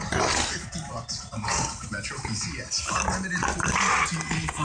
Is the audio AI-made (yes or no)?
no